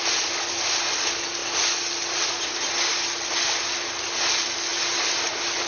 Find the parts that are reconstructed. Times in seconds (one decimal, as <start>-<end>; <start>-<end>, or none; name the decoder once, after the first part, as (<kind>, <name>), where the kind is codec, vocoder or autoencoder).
none

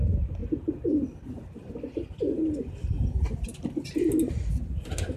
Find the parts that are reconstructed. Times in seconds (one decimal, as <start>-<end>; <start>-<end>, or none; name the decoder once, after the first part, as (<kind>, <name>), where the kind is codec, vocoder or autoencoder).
none

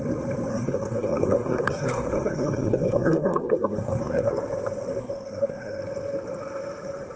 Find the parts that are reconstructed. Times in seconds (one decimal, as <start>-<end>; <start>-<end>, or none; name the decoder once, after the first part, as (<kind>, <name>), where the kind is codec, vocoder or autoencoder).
0.5-4.3 (codec, SNAC); 5.0-5.8

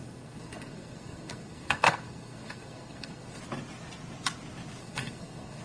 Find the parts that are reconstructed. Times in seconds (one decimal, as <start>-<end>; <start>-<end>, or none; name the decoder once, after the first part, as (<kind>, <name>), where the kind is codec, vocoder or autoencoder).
0.0-3.4 (codec, SNAC); 4.8-5.6

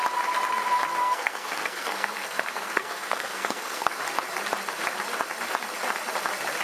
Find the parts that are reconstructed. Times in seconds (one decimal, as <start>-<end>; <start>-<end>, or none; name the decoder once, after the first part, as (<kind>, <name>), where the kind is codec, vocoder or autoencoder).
1.0-4.0 (codec, SNAC)

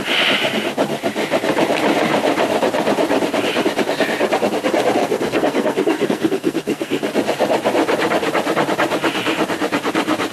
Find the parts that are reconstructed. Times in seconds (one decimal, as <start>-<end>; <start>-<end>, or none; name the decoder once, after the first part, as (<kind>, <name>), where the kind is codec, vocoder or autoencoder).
5.0-7.0 (codec, SNAC)